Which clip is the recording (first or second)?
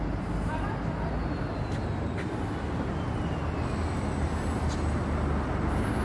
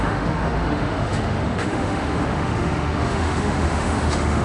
first